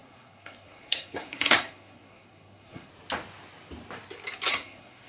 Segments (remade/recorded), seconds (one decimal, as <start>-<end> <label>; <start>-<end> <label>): 0.0-2.9 remade; 2.9-4.5 recorded; 4.5-5.1 remade

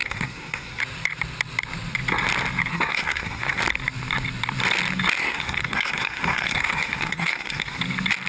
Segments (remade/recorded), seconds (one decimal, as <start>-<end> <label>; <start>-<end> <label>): 0.0-0.8 remade; 0.8-2.7 recorded; 2.7-3.6 remade; 3.6-5.2 recorded; 5.2-7.8 remade; 7.8-8.3 recorded